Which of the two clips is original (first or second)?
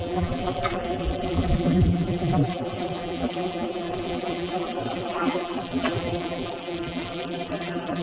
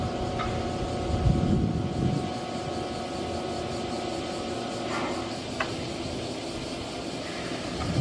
second